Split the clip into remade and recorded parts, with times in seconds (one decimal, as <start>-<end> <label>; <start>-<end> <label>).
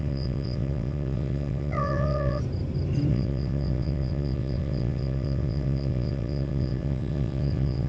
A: 0.0-2.4 remade; 2.4-3.1 recorded; 3.1-7.9 remade